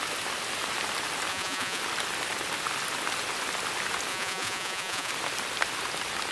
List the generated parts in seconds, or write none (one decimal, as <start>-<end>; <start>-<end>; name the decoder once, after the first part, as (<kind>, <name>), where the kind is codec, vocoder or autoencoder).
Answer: 1.3-1.8 (vocoder, Vocos); 4.1-5.1